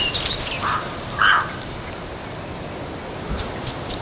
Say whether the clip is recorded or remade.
recorded